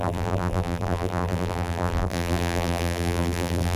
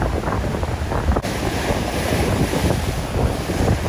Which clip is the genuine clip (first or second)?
second